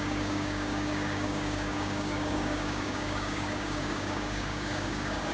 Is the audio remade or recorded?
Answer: remade